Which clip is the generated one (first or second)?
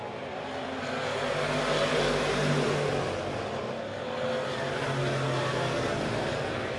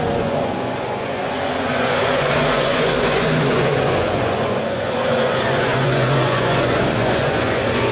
second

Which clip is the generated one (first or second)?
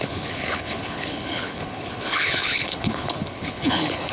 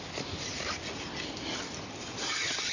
first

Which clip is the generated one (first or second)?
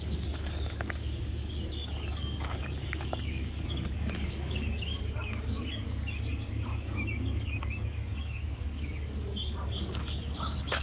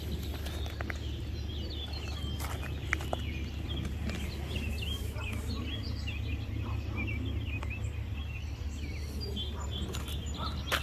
first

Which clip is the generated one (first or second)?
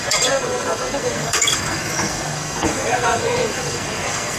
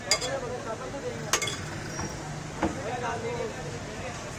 first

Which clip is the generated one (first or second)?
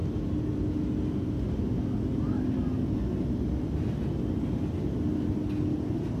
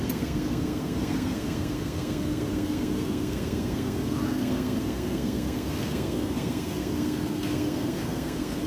second